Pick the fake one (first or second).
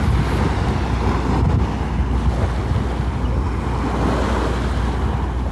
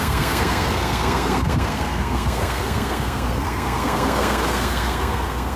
second